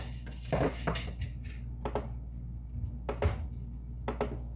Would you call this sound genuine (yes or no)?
yes